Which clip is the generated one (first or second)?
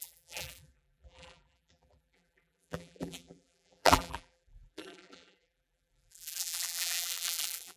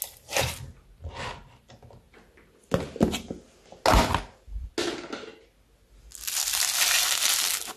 first